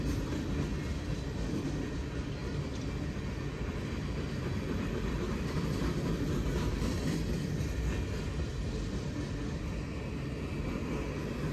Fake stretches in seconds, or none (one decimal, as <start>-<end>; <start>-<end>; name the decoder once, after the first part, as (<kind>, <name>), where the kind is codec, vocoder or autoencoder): 2.4-6.1 (vocoder, BigVGAN v2)